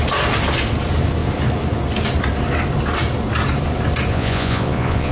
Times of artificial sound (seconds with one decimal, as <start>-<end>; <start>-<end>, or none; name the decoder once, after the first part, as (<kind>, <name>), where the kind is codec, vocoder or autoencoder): 4.1-5.1 (vocoder, Vocos)